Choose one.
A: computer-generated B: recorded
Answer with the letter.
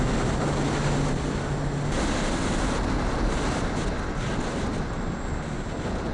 B